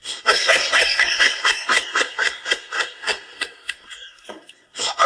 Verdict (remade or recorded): remade